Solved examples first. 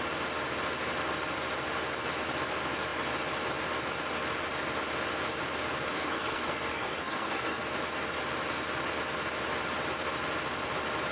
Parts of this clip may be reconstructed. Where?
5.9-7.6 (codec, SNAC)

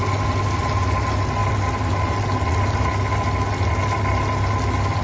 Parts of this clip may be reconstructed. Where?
none